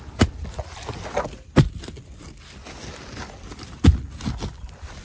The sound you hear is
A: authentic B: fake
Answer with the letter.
A